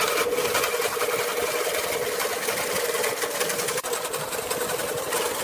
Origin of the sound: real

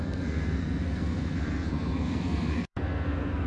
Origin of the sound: fake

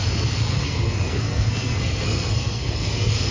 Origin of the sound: fake